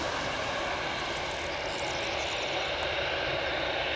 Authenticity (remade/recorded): recorded